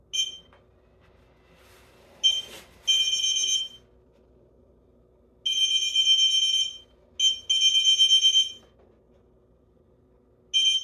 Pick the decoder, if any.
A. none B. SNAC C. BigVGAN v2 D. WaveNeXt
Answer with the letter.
A